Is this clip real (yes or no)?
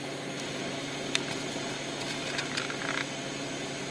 yes